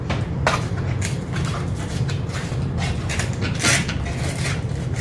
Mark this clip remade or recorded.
recorded